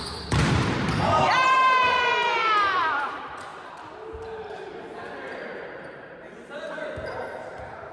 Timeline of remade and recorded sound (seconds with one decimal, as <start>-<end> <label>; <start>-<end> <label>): 0.0-3.5 remade; 3.5-5.3 recorded; 5.3-7.9 remade